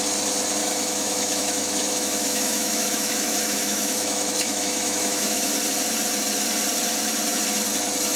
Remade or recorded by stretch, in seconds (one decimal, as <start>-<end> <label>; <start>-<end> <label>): 0.0-0.6 recorded; 0.6-5.5 remade; 5.5-8.2 recorded